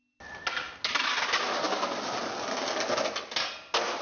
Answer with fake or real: real